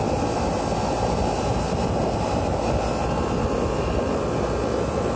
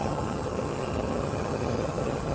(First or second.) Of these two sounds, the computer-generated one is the second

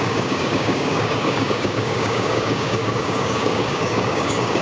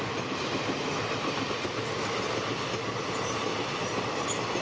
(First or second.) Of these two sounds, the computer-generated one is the first